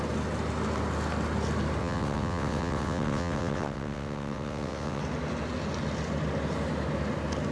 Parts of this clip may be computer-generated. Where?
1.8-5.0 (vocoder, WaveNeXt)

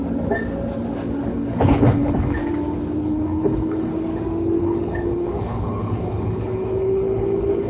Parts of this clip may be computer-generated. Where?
1.3-2.4 (codec, HILCodec); 3.0-3.9; 4.6-7.7

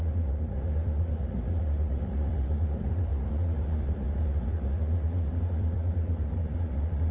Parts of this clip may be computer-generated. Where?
0.0-7.1 (vocoder, Vocos)

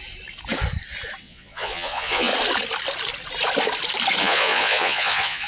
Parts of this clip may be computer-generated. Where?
1.2-2.3 (vocoder, Vocos); 4.2-5.5